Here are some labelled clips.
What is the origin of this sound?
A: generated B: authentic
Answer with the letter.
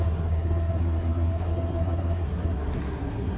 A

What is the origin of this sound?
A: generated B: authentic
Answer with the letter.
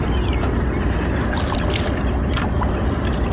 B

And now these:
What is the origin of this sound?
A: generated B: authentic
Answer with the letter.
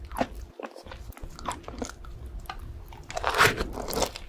B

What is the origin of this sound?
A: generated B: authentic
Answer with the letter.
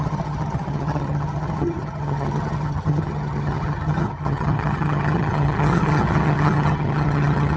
A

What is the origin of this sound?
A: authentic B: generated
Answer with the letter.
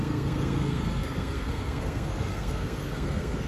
B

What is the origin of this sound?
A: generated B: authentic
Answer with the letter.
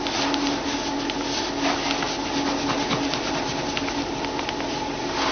B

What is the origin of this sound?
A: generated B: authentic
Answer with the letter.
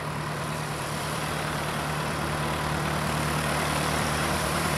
A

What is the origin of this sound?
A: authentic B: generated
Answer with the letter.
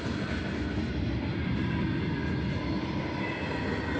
A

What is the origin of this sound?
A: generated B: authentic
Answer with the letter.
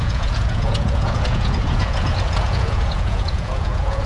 A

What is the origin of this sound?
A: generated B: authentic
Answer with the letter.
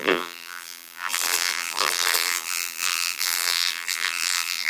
A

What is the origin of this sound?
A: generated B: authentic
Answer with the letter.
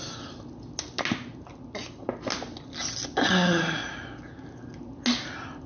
B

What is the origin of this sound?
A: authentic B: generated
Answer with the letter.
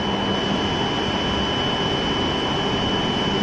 A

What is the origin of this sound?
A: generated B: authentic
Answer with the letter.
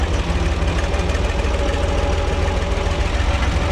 B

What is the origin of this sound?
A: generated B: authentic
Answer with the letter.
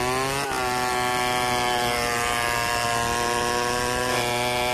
B